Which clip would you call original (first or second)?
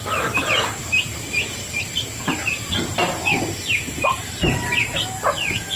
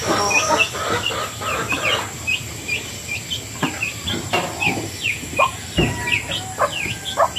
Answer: second